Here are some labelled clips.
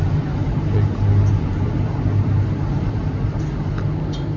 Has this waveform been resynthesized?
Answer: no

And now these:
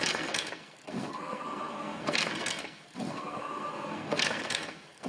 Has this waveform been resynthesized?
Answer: yes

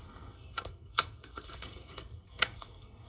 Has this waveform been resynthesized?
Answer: yes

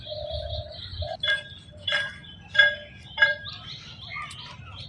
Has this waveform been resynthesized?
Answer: yes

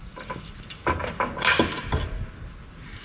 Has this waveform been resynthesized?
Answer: no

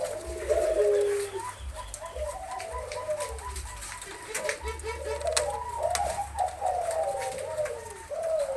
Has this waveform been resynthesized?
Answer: no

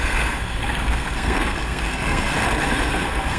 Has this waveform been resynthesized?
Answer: yes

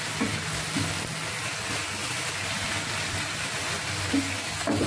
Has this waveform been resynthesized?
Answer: no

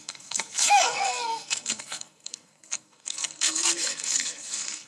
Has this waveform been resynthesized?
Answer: yes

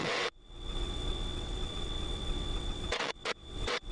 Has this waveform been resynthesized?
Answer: yes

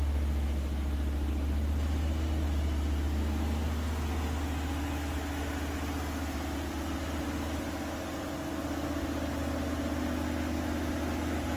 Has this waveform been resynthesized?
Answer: no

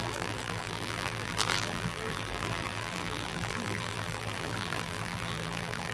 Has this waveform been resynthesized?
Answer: yes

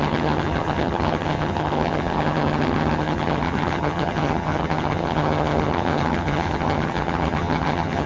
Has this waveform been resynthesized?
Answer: yes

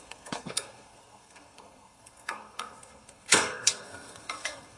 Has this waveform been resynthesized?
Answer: yes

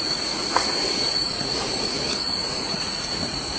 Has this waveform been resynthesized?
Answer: yes